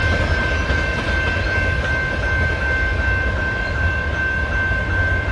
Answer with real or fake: real